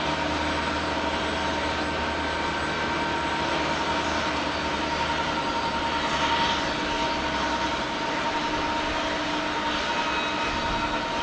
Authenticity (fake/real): real